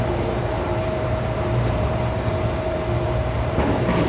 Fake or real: fake